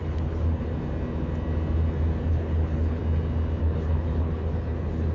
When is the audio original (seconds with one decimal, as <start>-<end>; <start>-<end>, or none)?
0.7-2.3; 3.0-3.6